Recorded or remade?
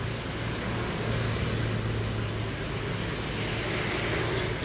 recorded